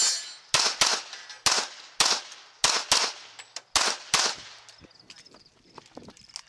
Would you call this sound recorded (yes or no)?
yes